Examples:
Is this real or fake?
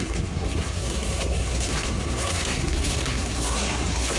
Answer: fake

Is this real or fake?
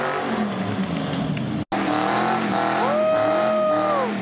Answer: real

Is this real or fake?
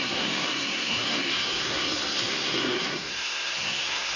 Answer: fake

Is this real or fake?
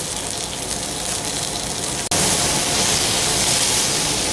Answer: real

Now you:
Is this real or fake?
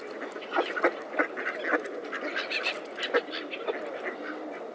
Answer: real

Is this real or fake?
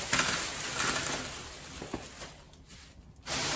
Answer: real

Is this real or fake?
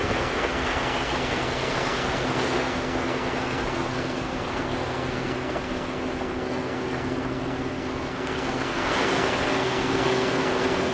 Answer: fake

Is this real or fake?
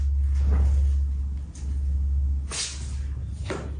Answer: real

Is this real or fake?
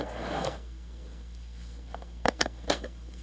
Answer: fake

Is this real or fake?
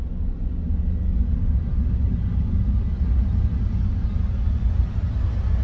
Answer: real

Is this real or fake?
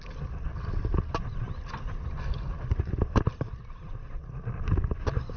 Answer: real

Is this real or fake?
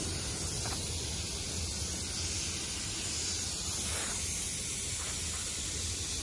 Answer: real